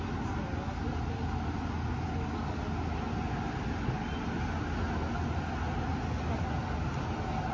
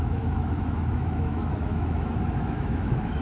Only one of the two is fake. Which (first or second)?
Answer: second